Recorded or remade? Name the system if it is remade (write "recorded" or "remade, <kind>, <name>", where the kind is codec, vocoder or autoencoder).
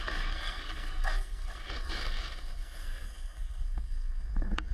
remade, codec, SNAC